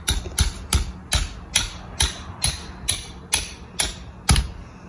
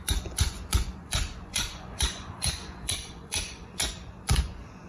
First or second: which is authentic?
first